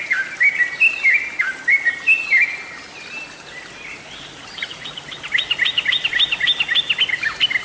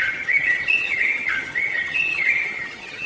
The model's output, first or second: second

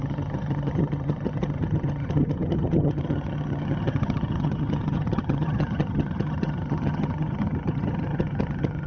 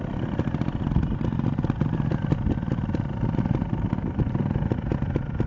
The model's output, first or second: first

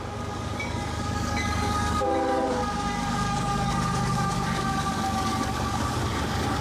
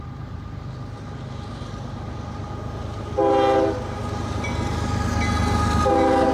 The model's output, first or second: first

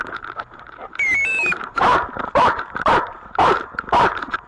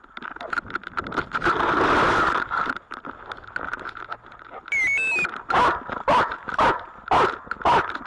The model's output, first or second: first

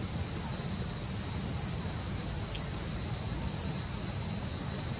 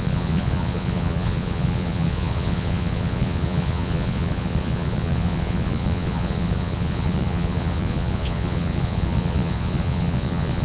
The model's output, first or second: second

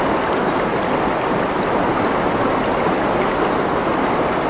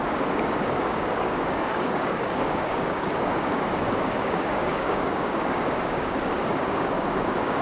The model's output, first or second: second